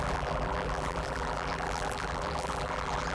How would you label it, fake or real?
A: fake